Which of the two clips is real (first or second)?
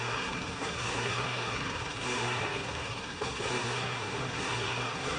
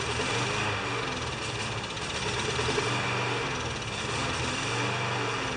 second